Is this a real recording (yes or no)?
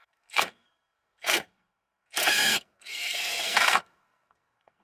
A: no